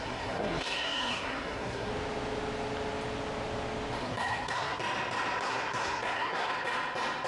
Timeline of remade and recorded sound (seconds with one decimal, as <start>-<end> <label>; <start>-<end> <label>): 0.0-1.9 remade; 1.9-4.0 recorded; 4.0-4.8 remade; 4.8-5.4 recorded; 5.4-6.5 remade; 6.5-7.3 recorded